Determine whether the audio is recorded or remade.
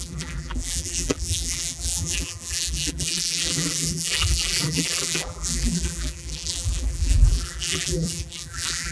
remade